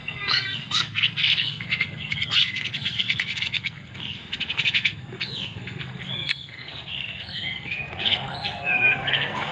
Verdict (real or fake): fake